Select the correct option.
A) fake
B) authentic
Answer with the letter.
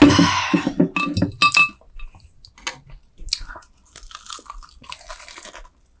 B